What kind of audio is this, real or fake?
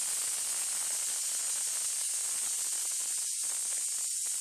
real